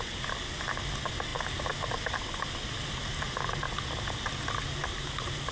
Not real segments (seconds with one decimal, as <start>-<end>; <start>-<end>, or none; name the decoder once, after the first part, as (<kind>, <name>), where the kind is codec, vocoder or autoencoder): none